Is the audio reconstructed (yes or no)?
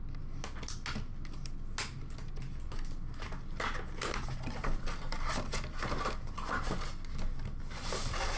no